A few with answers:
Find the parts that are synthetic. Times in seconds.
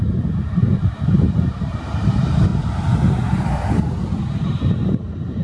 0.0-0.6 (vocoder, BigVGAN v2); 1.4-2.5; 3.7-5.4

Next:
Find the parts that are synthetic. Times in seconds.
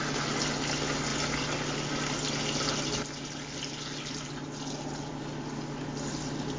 none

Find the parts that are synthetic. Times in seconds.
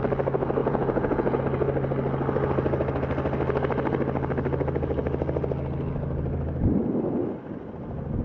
0.6-1.4 (vocoder, Vocos)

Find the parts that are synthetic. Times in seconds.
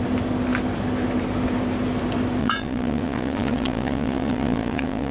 2.4-5.1 (vocoder, Vocos)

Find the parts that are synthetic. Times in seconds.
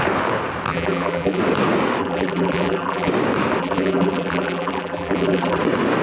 0.7-1.4 (vocoder, BigVGAN v2); 2.0-3.1; 3.6-5.6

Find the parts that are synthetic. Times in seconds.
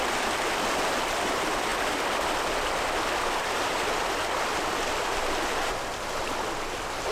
none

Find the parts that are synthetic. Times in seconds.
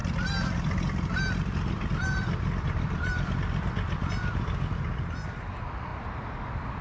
0.0-4.1 (vocoder, BigVGAN v2)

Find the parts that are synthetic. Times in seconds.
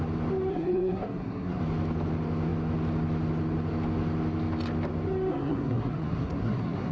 0.5-1.6 (codec, SNAC); 5.3-6.9